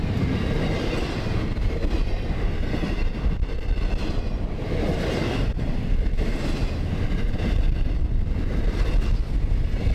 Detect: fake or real real